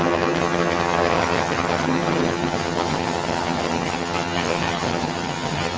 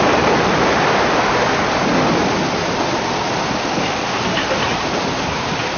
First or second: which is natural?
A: second